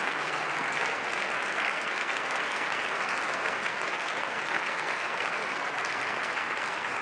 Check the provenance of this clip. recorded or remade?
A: remade